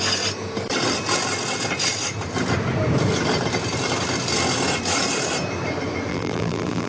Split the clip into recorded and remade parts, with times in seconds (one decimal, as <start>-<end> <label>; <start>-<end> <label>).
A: 0.0-6.1 recorded; 6.1-6.9 remade